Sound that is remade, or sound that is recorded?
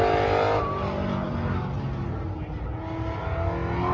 recorded